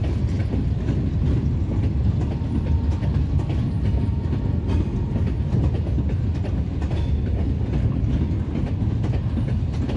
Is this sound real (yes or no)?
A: yes